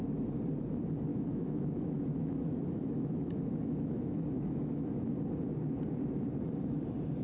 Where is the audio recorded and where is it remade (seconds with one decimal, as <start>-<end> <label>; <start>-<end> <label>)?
0.0-1.1 recorded; 1.1-5.1 remade; 5.1-7.2 recorded